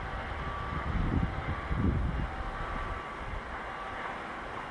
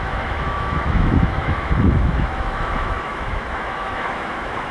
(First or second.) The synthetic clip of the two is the second